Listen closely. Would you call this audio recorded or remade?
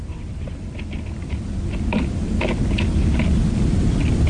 recorded